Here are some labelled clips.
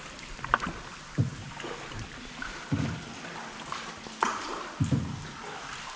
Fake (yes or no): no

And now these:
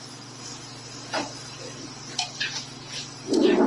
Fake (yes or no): no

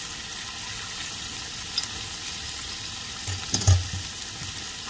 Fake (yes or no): no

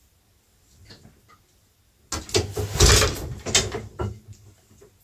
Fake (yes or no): no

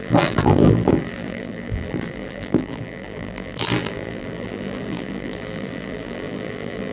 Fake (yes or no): yes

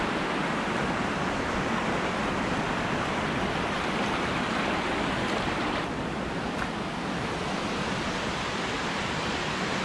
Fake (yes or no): no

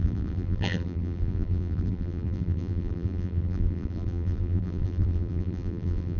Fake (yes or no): yes